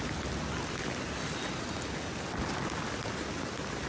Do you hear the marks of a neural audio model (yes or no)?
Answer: no